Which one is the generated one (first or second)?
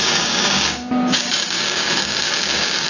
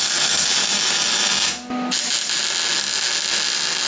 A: first